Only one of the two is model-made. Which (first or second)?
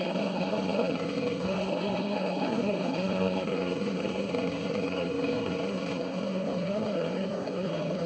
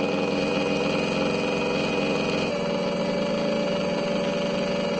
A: first